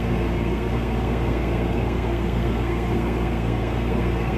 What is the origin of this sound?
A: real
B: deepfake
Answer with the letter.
B